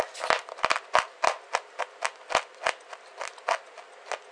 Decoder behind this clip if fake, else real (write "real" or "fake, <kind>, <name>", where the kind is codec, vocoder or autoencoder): real